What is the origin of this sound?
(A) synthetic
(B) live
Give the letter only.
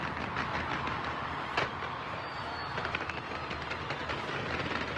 B